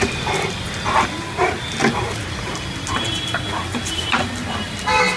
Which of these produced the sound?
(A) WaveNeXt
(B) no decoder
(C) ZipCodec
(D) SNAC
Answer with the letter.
B